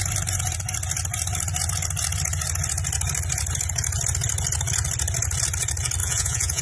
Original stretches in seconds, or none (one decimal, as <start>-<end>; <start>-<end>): 0.0-6.0